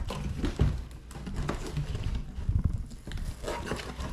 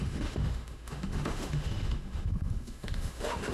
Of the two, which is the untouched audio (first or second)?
first